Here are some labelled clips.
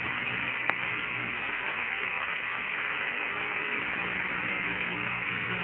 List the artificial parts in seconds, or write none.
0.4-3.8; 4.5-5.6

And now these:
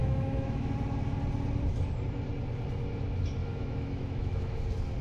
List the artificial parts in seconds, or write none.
0.0-0.7; 3.4-4.6

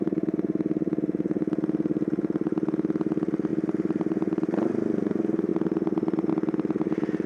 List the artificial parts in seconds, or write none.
3.5-4.7

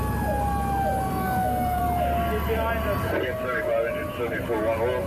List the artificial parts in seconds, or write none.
1.1-1.8